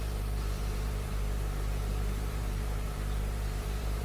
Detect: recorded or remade remade